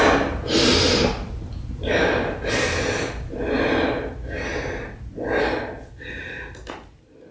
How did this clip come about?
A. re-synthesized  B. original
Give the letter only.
B